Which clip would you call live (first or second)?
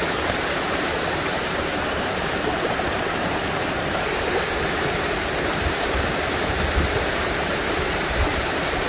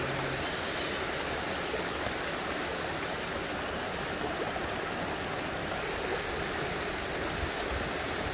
second